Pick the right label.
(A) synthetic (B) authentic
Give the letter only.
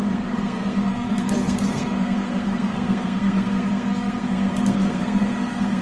A